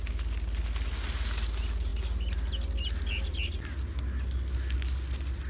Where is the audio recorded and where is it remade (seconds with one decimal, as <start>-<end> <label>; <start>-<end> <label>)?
0.0-5.5 recorded